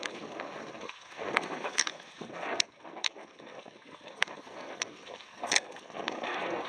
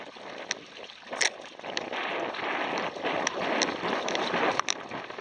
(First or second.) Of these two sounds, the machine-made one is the first